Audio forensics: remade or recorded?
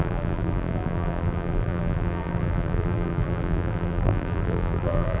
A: remade